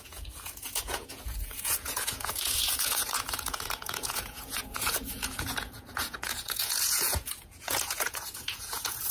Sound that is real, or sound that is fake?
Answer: fake